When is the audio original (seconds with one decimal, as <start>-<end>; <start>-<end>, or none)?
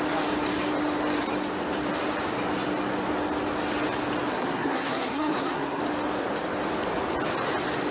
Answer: 0.0-4.3; 5.8-7.9